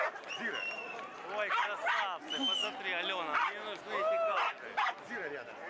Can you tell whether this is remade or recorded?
recorded